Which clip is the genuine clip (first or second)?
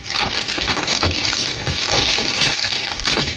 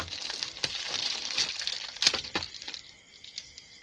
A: second